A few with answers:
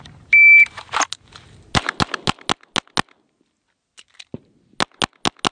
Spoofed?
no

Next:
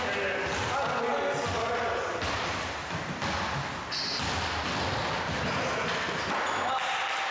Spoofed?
no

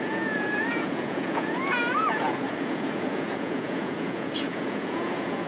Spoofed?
yes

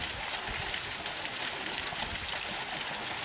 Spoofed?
no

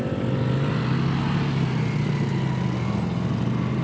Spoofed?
no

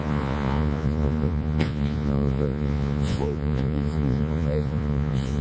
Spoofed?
yes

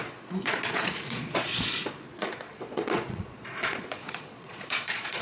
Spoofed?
yes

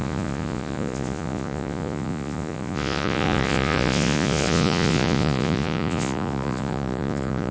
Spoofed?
yes